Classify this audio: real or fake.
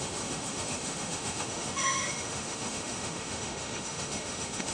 fake